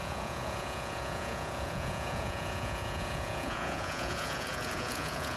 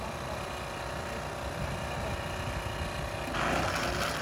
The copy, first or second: first